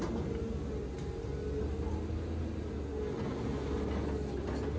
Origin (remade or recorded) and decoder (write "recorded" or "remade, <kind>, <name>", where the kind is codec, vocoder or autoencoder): recorded